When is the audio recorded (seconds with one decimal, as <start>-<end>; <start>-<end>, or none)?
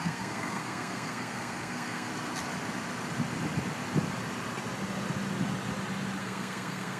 2.1-6.2